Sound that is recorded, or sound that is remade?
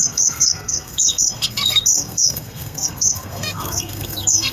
remade